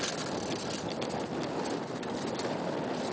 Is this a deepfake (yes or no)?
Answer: no